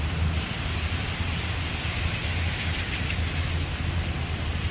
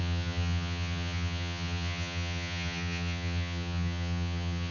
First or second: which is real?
first